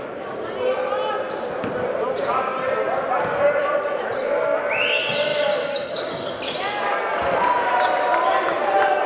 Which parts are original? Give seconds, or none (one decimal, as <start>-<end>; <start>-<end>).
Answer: 0.0-9.1